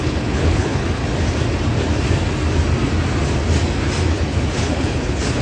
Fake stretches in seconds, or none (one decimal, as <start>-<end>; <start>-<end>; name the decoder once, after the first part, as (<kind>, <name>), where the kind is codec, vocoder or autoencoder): 0.0-1.0 (codec, HILCodec); 4.1-5.4